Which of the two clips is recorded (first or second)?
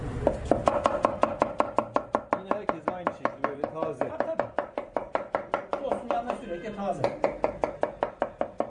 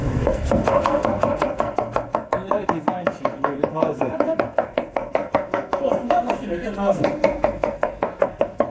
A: first